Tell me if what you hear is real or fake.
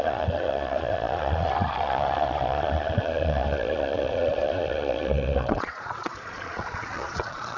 fake